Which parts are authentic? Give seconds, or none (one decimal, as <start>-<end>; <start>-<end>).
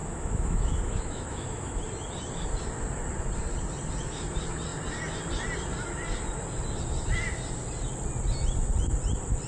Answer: 1.8-9.5